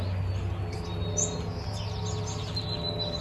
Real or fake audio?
real